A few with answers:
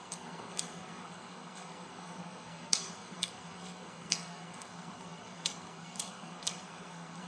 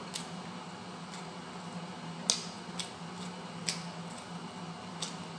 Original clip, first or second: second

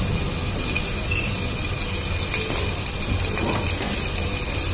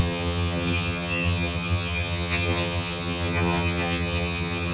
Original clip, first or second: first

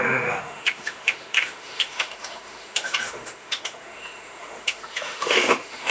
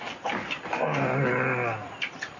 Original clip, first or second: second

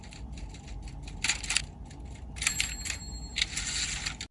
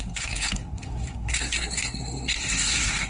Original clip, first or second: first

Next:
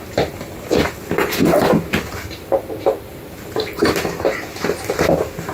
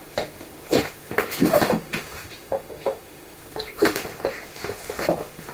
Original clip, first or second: first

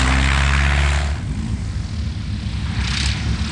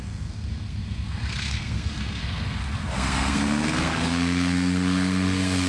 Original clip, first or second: first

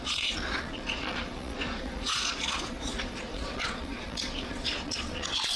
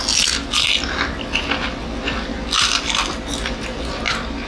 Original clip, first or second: second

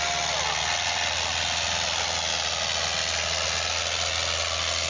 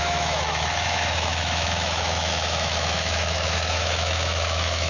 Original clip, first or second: first